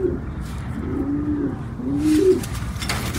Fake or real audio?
real